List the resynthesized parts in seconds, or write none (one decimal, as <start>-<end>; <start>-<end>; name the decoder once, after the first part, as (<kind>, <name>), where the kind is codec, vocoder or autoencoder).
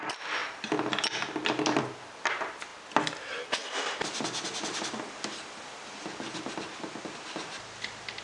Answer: none